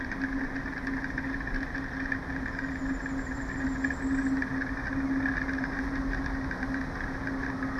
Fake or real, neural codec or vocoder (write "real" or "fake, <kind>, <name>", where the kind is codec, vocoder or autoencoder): real